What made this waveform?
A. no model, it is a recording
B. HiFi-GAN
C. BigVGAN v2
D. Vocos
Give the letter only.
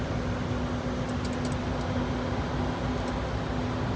A